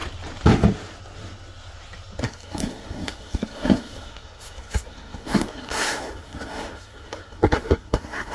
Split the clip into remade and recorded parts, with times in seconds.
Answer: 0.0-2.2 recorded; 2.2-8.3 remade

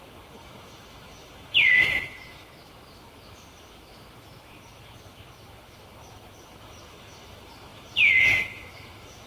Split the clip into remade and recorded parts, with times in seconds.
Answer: 0.0-9.3 remade

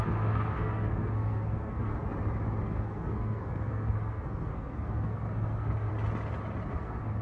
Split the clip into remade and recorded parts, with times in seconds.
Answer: 0.0-1.9 remade; 1.9-2.6 recorded; 2.6-5.9 remade; 5.9-6.7 recorded; 6.7-7.2 remade

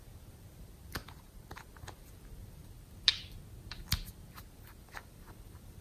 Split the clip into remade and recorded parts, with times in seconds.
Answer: 0.0-2.6 remade; 2.6-4.8 recorded; 4.8-5.8 remade